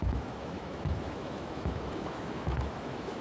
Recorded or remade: remade